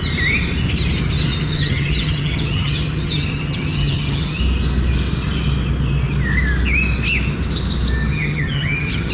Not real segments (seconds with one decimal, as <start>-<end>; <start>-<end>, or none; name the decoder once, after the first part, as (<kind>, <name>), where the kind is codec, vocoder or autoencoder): 1.5-4.4 (vocoder, HiFi-GAN); 8.1-9.1